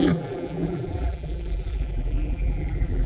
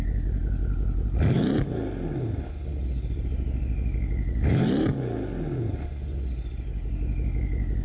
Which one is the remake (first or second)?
first